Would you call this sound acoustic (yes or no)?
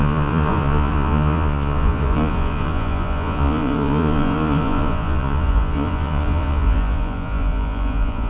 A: no